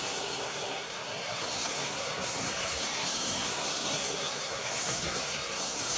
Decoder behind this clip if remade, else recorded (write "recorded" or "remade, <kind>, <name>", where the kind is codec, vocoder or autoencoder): remade, codec, SNAC